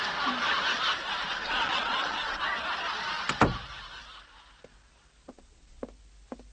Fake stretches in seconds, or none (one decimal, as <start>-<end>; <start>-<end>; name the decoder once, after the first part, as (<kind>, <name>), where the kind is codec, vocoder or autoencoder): 1.0-2.4 (vocoder, Vocos); 5.2-5.8

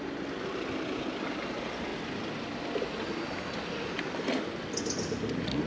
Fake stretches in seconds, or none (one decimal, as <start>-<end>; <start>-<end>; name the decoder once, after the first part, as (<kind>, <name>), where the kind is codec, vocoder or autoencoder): none

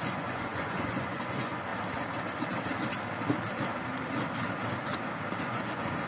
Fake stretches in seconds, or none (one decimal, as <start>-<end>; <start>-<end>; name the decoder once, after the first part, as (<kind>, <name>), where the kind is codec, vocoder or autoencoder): 0.0-1.7 (vocoder, Vocos); 5.4-6.1

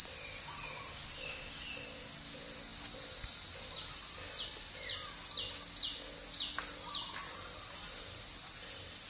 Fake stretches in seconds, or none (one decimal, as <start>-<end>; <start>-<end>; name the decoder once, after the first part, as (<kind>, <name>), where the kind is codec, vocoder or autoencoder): 0.0-0.7 (vocoder, BigVGAN v2)

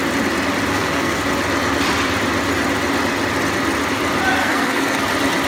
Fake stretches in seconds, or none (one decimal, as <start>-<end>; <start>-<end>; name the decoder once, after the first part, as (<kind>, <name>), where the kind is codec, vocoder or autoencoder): 0.7-1.2 (codec, SNAC); 4.4-5.0

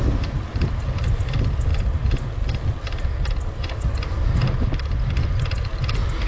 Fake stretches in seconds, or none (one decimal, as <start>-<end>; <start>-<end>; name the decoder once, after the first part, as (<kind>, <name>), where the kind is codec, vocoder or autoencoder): none